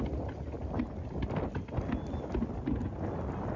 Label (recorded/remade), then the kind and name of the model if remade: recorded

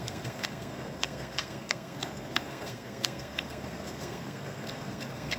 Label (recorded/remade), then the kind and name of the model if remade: remade, codec, SNAC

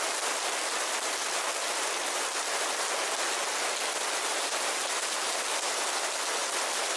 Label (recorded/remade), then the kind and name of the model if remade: recorded